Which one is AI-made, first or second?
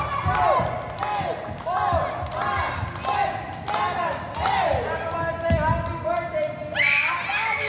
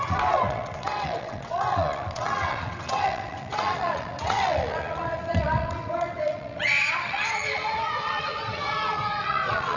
second